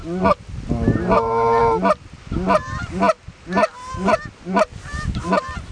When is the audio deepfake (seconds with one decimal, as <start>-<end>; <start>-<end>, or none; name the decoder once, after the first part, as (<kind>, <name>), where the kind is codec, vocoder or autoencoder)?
none